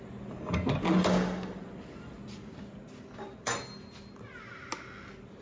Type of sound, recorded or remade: recorded